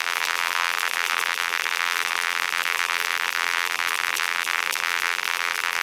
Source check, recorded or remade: remade